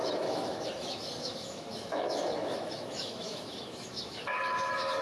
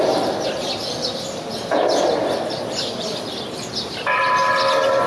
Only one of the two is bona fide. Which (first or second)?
second